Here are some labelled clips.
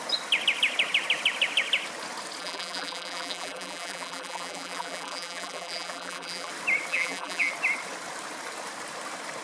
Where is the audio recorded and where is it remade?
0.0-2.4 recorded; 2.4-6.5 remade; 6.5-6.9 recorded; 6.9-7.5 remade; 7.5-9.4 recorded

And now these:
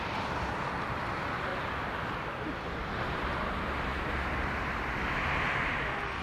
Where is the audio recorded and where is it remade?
0.0-1.5 remade; 1.5-2.0 recorded; 2.0-3.9 remade; 3.9-5.1 recorded; 5.1-6.2 remade